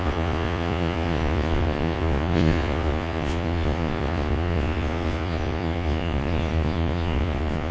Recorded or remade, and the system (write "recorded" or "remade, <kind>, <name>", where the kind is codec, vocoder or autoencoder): remade, vocoder, Vocos